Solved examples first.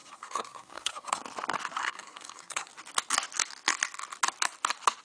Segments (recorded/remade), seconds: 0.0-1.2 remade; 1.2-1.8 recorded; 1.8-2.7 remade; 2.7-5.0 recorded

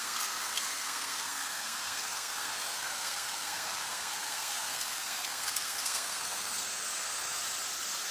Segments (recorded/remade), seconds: 0.0-7.4 remade; 7.4-8.1 recorded

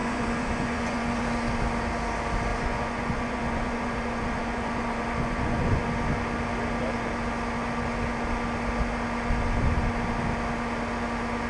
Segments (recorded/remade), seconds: 0.0-1.1 remade; 1.1-2.5 recorded; 2.5-5.8 remade; 5.8-11.5 recorded

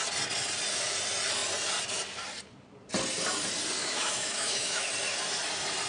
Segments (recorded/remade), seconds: 0.0-3.8 recorded; 3.8-4.9 remade; 4.9-5.9 recorded

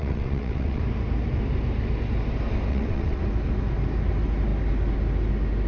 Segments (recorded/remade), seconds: 0.0-0.8 remade; 0.8-2.7 recorded; 2.7-3.2 remade; 3.2-5.7 recorded